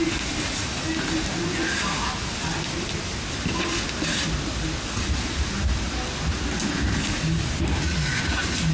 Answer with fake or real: real